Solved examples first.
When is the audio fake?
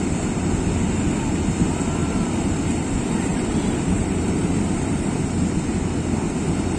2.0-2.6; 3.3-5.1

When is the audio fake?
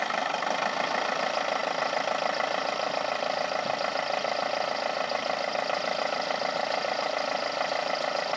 none